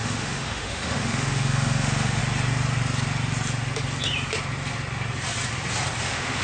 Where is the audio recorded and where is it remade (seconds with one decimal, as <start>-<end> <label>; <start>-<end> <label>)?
0.0-2.2 remade; 2.2-6.0 recorded; 6.0-6.4 remade

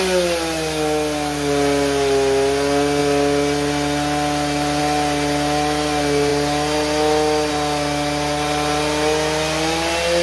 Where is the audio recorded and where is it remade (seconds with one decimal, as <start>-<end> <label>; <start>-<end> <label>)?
0.0-10.2 recorded

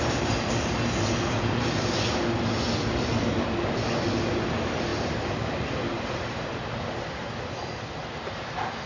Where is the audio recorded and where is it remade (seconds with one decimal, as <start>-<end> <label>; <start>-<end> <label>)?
0.0-8.9 recorded

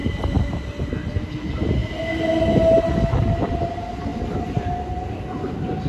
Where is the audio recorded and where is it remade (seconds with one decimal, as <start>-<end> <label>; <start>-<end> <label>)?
0.0-5.9 recorded

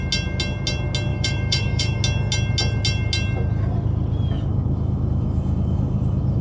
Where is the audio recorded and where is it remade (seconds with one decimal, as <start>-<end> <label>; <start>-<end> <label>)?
0.0-1.1 recorded; 1.1-2.0 remade; 2.0-4.5 recorded; 4.5-6.4 remade

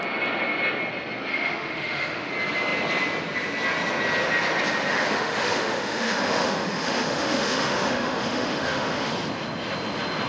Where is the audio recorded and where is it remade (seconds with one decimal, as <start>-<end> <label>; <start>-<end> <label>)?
0.0-1.3 recorded; 1.3-2.3 remade; 2.3-4.9 recorded; 4.9-9.1 remade; 9.1-10.3 recorded

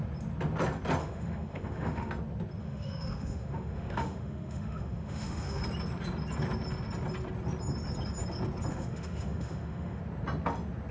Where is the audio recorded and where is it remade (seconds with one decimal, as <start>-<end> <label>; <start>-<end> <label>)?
0.0-1.0 recorded; 1.0-2.1 remade; 2.1-2.6 recorded; 2.6-5.6 remade; 5.6-8.7 recorded; 8.7-10.0 remade; 10.0-10.9 recorded

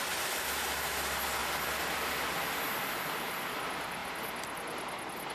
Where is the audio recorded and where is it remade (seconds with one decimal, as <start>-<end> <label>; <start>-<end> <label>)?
0.0-5.3 recorded